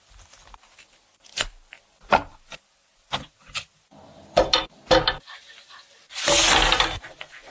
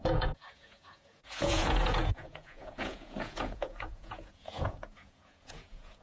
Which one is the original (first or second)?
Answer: first